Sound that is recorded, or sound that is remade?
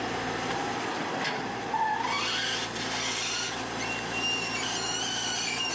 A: recorded